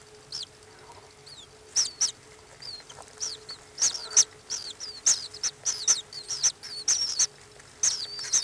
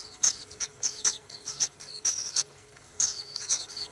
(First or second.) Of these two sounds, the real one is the first